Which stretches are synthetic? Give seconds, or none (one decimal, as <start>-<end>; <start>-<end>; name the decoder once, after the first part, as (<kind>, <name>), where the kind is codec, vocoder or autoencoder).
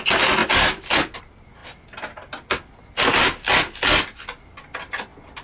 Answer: none